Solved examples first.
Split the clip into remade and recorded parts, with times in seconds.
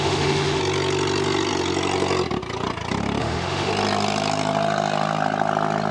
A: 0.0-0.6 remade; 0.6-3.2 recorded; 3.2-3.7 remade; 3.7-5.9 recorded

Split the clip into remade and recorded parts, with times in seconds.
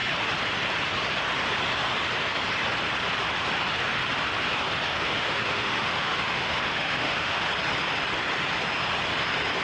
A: 0.0-4.9 recorded; 4.9-7.5 remade; 7.5-9.6 recorded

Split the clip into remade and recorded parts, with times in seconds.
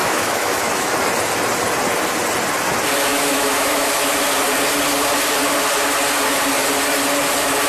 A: 0.0-0.9 remade; 0.9-3.1 recorded; 3.1-4.2 remade; 4.2-7.7 recorded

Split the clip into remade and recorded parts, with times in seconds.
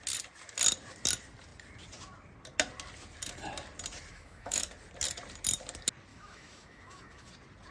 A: 0.0-4.1 recorded; 4.1-4.7 remade; 4.7-6.1 recorded; 6.1-7.3 remade; 7.3-7.7 recorded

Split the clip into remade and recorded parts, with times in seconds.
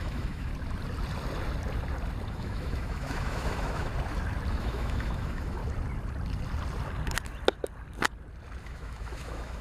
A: 0.0-0.5 remade; 0.5-2.3 recorded; 2.3-3.9 remade; 3.9-4.5 recorded; 4.5-5.6 remade; 5.6-8.6 recorded; 8.6-9.6 remade